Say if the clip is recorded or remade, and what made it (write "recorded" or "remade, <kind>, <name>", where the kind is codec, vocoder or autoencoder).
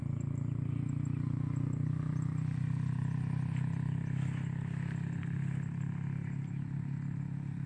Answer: recorded